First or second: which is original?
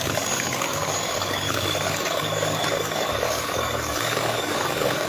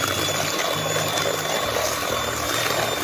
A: second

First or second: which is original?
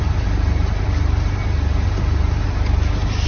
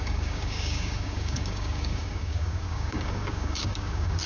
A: first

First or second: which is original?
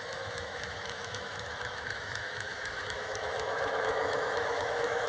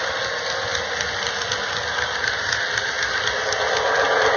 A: second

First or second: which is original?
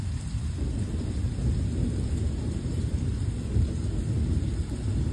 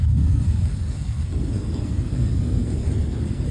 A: first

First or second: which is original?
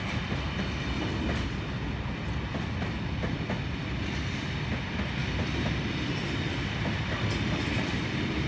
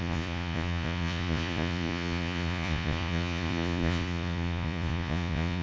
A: first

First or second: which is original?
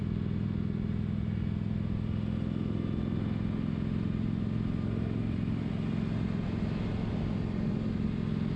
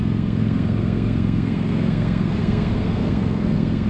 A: first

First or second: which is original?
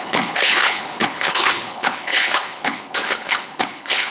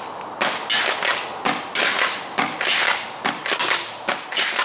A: second